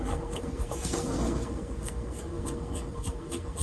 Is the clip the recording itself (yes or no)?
no